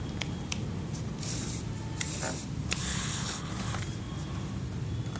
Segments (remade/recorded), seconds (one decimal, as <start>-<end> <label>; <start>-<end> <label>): 0.0-2.9 recorded; 2.9-3.5 remade; 3.5-5.2 recorded